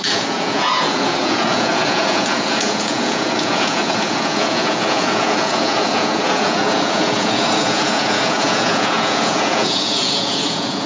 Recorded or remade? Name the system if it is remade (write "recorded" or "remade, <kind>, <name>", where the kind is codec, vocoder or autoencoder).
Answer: remade, vocoder, Vocos